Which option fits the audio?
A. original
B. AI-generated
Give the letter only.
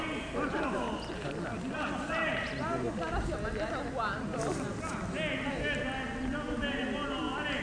A